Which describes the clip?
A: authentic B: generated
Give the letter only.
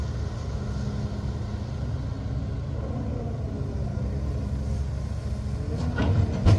A